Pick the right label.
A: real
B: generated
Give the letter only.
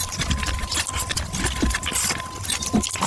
A